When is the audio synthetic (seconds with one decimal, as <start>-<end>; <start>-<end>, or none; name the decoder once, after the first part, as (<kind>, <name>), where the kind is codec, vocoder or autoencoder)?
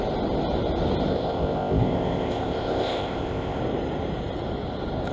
1.1-3.6 (codec, ZipCodec)